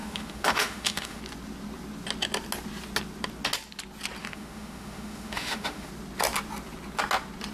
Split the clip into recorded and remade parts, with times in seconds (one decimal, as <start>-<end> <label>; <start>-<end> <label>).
0.0-1.2 remade; 1.2-4.2 recorded; 4.2-5.9 remade; 5.9-7.5 recorded